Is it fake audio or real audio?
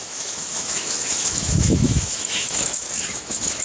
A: fake